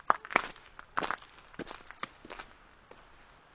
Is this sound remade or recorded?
recorded